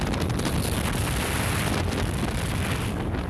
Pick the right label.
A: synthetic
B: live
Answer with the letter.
B